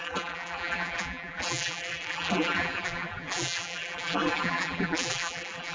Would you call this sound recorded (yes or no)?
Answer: no